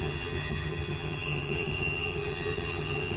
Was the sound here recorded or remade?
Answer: remade